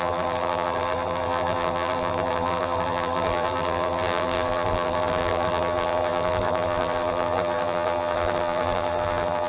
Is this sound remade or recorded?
remade